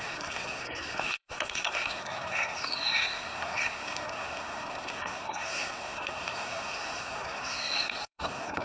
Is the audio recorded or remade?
remade